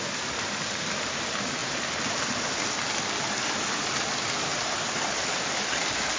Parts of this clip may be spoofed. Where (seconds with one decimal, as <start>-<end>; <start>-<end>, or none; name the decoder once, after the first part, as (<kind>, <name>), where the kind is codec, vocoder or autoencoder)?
none